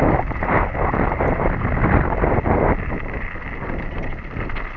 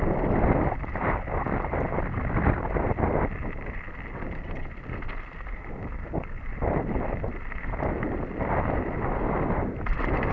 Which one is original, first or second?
first